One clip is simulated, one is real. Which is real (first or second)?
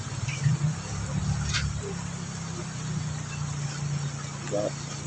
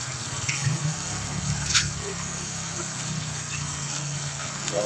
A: first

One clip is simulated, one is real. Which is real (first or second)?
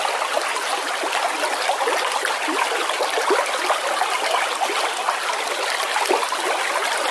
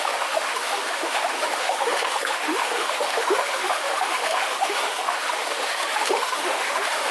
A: first